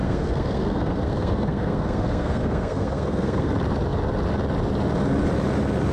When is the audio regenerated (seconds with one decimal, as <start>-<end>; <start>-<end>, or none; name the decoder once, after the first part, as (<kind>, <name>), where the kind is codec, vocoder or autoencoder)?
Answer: 0.0-3.5 (codec, SNAC)